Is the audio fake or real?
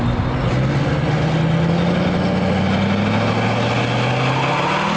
real